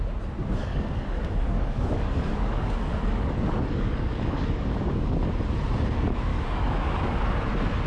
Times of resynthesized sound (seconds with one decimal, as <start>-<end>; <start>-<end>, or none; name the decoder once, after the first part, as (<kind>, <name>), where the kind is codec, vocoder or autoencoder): 0.6-5.3 (codec, DAC); 6.3-7.2